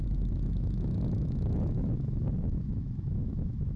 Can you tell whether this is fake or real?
fake